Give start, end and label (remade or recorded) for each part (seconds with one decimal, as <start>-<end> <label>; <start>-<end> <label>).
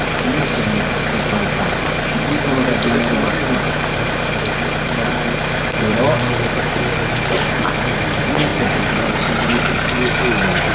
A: 0.0-10.7 recorded